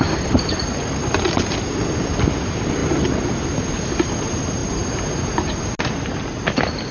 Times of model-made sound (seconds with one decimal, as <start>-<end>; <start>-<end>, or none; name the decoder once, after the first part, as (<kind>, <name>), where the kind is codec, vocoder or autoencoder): none